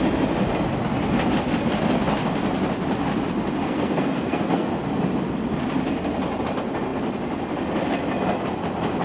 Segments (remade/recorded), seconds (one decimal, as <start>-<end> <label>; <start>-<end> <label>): 0.0-3.6 recorded; 3.6-4.7 remade; 4.7-9.0 recorded